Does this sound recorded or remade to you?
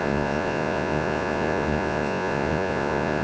remade